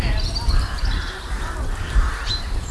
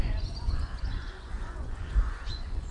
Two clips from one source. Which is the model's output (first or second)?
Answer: second